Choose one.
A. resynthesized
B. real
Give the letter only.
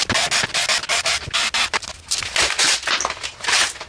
B